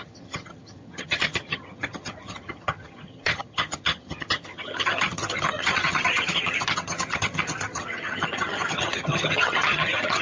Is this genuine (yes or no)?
no